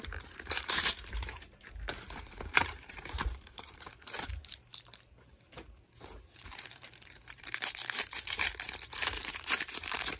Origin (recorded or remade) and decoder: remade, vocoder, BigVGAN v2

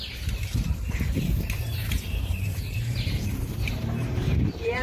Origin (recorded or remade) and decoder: remade, vocoder, BigVGAN v2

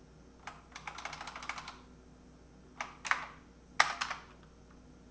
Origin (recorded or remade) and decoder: recorded